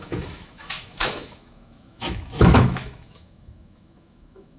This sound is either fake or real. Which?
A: fake